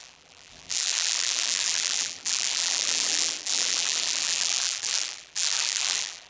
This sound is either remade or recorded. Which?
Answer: remade